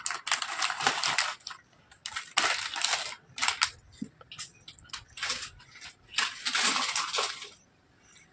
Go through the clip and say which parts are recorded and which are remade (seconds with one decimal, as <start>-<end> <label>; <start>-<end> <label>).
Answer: 0.0-8.3 recorded